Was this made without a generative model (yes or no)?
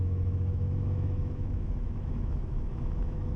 no